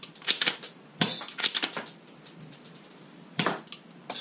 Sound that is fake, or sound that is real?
real